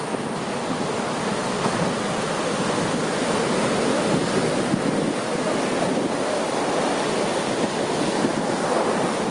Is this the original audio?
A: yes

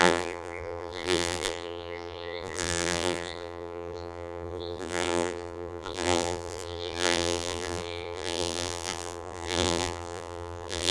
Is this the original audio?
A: no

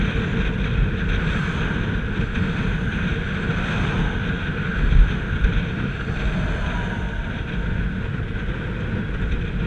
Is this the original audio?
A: yes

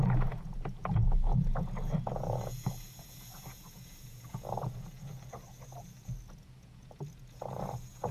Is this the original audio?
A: no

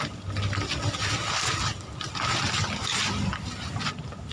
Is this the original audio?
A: yes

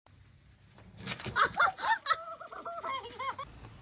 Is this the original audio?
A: yes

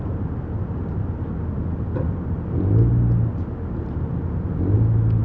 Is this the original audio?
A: yes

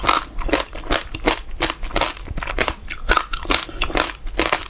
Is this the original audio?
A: yes